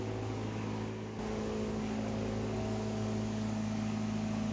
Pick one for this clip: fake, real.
fake